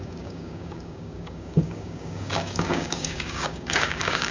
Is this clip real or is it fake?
fake